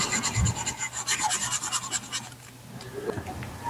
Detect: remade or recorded recorded